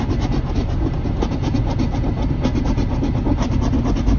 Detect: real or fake real